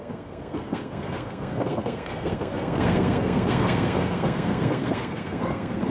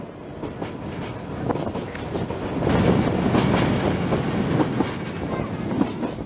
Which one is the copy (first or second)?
first